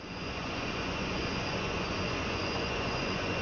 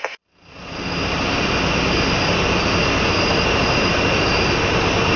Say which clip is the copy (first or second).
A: first